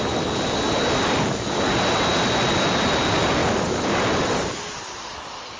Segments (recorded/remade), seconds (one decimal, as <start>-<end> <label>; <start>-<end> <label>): 0.0-5.6 recorded